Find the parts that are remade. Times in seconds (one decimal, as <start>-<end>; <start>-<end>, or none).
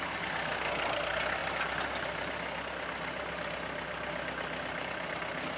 none